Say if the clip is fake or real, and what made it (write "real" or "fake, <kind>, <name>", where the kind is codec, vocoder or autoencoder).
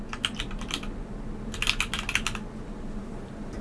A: real